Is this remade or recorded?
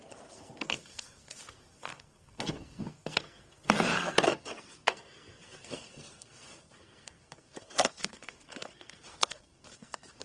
remade